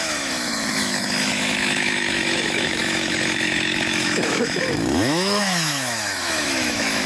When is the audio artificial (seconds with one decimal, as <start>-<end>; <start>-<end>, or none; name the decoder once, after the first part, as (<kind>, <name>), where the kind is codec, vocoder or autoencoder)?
0.0-7.1 (autoencoder, DAC-VAE)